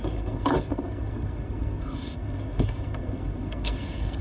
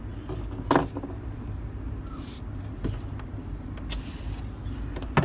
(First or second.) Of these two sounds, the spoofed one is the first